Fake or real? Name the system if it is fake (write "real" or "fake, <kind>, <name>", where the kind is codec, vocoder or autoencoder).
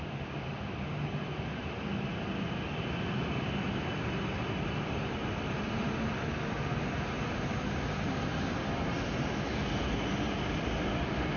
real